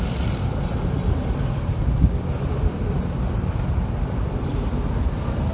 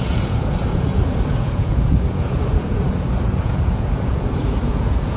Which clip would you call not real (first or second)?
second